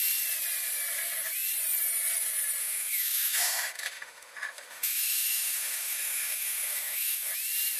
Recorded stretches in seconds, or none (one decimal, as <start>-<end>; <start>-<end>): 0.0-2.6; 7.3-7.8